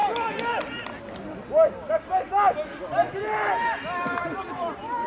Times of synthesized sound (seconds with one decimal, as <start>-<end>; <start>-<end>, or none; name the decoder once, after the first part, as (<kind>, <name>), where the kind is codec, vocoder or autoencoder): none